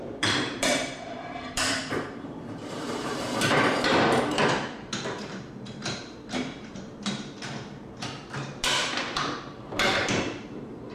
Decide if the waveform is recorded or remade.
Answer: remade